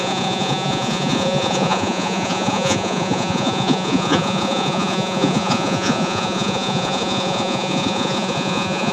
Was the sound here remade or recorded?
remade